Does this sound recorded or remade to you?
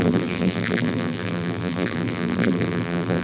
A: remade